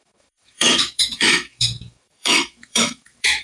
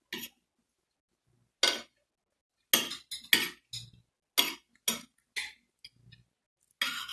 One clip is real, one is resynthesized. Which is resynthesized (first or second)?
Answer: first